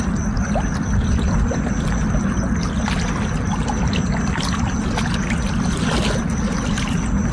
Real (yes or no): yes